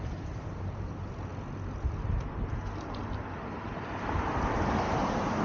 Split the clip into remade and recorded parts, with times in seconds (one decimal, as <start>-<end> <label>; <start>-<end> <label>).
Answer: 0.0-1.3 remade; 1.3-3.2 recorded; 3.2-5.4 remade